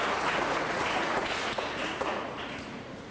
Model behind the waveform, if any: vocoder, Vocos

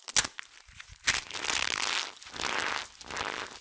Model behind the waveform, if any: none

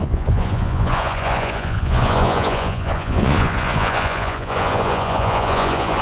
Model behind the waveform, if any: vocoder, Vocos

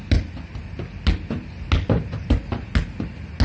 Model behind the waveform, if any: none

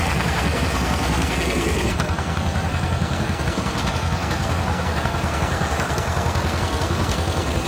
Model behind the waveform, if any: codec, SNAC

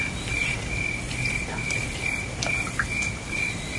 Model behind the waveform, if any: none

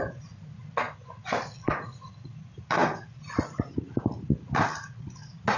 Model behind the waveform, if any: none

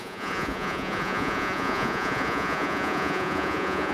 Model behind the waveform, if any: vocoder, Vocos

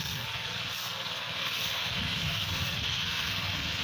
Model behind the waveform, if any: codec, SNAC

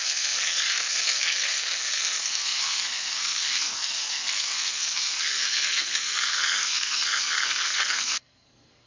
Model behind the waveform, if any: codec, SNAC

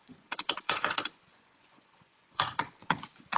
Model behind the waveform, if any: vocoder, Vocos